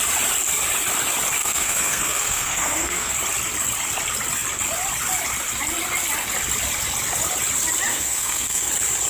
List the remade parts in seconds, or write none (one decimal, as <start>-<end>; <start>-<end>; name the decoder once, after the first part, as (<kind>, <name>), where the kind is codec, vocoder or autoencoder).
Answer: 1.4-3.1 (codec, SNAC); 7.9-8.7